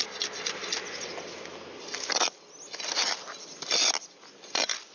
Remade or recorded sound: recorded